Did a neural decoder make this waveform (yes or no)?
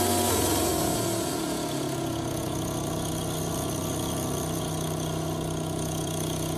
no